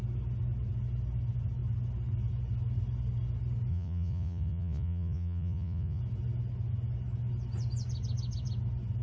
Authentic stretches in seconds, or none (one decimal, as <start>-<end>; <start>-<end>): 0.0-3.7; 6.0-9.0